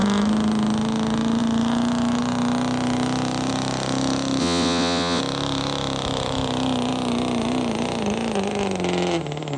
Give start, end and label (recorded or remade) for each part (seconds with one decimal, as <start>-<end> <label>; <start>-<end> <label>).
0.0-4.4 recorded; 4.4-5.2 remade; 5.2-9.6 recorded